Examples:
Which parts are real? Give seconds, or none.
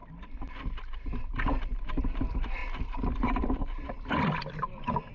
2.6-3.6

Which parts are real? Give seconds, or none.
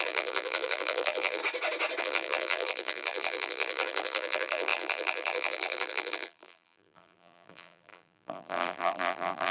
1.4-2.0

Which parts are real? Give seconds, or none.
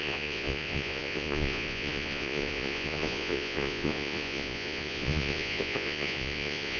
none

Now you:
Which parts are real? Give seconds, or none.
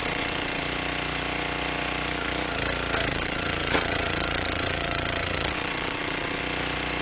0.6-3.1; 6.4-7.0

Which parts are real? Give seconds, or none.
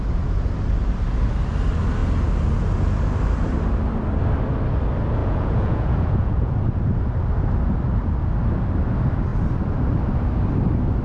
0.0-5.2; 6.5-11.0